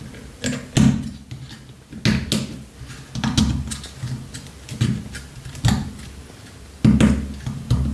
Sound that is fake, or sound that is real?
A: real